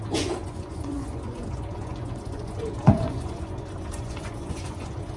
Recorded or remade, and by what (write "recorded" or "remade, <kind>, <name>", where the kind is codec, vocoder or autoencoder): remade, vocoder, Vocos